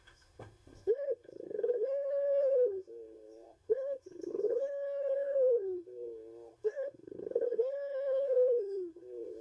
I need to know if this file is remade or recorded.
remade